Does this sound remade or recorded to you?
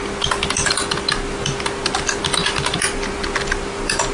recorded